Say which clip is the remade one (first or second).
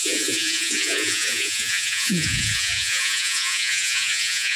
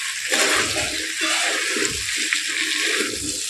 first